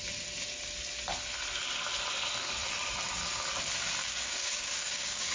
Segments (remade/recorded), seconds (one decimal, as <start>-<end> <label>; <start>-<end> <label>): 0.0-4.0 recorded; 4.0-5.3 remade